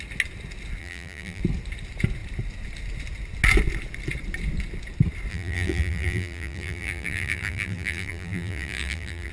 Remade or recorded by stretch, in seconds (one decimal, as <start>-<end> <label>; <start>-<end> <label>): 0.0-0.8 recorded; 0.8-1.4 remade; 1.4-5.3 recorded; 5.3-9.3 remade